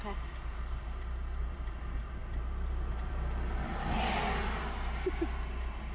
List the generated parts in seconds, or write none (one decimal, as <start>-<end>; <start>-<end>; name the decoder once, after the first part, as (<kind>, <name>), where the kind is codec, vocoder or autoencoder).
none